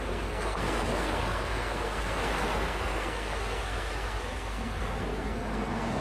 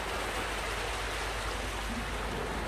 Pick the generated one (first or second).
first